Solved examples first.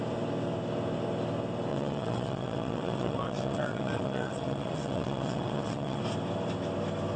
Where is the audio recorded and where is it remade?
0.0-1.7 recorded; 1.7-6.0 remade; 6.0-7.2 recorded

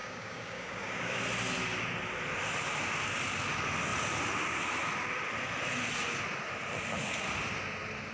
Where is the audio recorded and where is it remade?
0.0-1.2 remade; 1.2-8.1 recorded

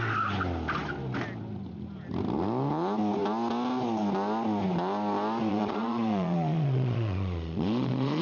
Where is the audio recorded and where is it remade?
0.0-5.5 recorded; 5.5-8.2 remade

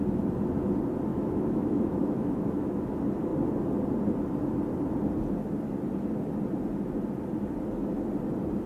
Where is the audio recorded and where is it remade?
0.0-1.1 recorded; 1.1-2.9 remade; 2.9-8.7 recorded

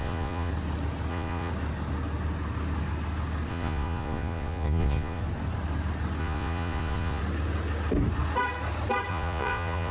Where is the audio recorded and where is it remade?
0.0-0.5 remade; 0.5-1.1 recorded; 1.1-1.5 remade; 1.5-3.5 recorded; 3.5-5.2 remade; 5.2-6.2 recorded; 6.2-7.2 remade; 7.2-9.1 recorded; 9.1-9.9 remade

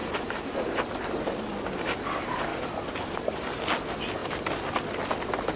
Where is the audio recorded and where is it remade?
0.0-0.6 remade; 0.6-2.5 recorded; 2.5-3.6 remade; 3.6-5.6 recorded

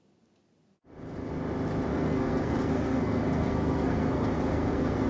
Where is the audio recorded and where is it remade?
0.0-1.9 recorded; 1.9-5.1 remade

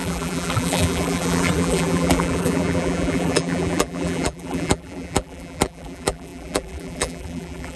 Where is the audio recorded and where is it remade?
0.0-7.8 remade